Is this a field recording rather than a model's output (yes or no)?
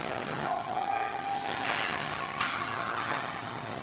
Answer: no